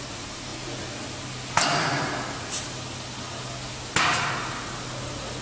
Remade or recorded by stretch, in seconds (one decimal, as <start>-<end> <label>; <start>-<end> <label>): 0.0-5.4 recorded